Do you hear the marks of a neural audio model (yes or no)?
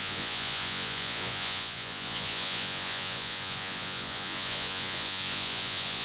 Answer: yes